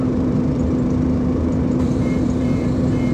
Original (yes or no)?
no